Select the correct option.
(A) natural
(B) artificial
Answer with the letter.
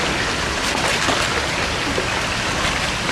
A